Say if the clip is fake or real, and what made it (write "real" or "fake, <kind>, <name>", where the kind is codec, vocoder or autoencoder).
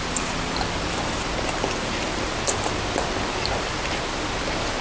real